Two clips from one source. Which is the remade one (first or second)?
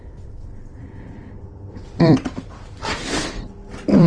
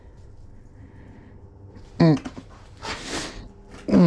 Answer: first